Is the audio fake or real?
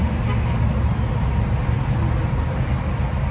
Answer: real